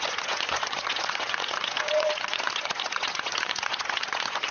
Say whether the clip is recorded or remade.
remade